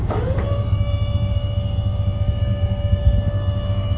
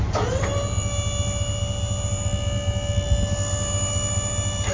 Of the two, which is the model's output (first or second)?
first